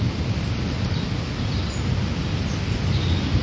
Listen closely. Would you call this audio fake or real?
real